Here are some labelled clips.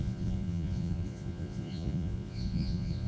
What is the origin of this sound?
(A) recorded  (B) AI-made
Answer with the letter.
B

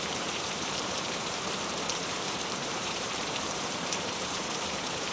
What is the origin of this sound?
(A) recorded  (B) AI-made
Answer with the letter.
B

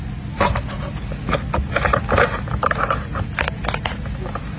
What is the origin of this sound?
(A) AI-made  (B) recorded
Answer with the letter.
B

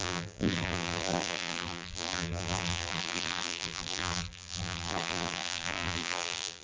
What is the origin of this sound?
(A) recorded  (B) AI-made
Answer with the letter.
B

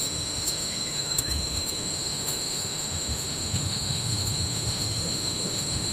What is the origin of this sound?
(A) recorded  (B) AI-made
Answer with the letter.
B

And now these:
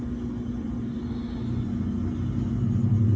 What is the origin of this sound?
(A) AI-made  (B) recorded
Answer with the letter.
B